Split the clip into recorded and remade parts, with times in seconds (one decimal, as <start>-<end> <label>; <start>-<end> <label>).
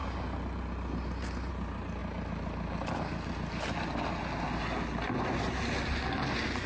0.0-6.7 recorded